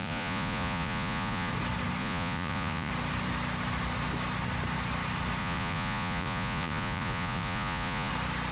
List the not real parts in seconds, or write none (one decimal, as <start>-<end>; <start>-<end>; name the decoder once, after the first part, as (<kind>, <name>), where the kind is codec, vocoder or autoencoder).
0.0-1.5 (vocoder, Vocos); 2.0-2.9; 5.4-8.1